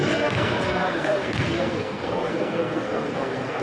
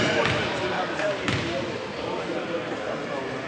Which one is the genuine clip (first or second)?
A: second